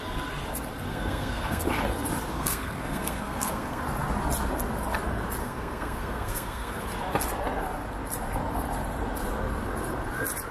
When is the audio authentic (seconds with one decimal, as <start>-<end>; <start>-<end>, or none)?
0.0-0.9; 1.6-2.3; 3.8-5.4; 6.8-10.5